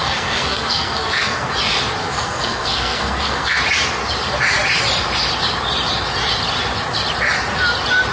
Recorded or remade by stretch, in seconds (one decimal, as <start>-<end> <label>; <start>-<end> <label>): 0.0-1.5 remade; 1.5-2.0 recorded; 2.0-3.6 remade; 3.6-8.1 recorded